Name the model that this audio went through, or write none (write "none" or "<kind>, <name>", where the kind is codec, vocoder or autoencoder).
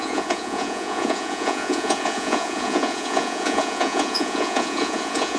vocoder, Vocos